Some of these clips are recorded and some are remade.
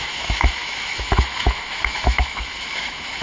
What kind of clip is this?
remade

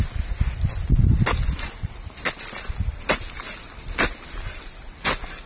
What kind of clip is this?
recorded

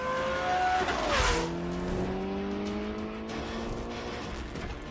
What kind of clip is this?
recorded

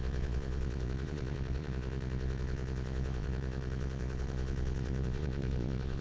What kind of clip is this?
remade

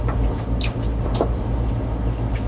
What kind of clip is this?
recorded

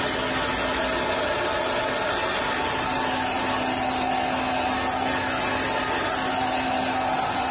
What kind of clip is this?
recorded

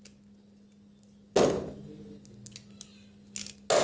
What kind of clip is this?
recorded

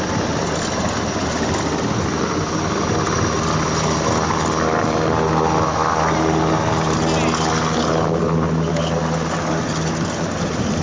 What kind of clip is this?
recorded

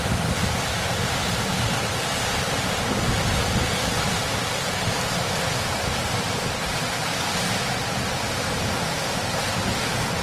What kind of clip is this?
recorded